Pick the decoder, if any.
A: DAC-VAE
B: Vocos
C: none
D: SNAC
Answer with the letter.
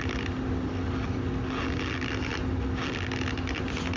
C